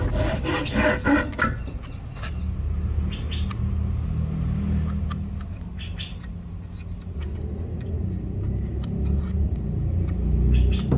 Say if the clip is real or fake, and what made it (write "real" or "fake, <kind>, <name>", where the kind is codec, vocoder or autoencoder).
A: real